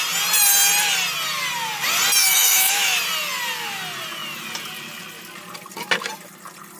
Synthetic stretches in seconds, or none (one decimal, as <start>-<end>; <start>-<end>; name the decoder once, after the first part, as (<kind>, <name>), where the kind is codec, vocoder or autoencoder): 2.2-3.0 (autoencoder, DAC-VAE)